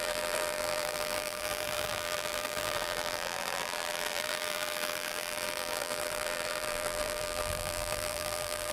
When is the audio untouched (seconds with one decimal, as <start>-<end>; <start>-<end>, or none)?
none